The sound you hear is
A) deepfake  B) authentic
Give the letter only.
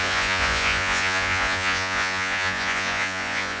A